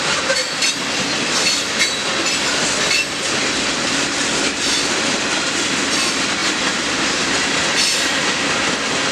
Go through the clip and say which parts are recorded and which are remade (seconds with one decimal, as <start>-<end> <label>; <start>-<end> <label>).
0.0-9.1 recorded